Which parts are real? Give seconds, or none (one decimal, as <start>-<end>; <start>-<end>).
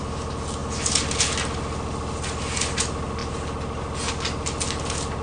0.0-5.2